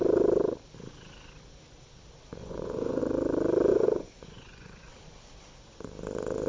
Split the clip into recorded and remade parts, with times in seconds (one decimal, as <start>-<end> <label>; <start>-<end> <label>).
0.0-2.4 recorded; 2.4-3.0 remade; 3.0-3.7 recorded; 3.7-4.9 remade; 4.9-6.5 recorded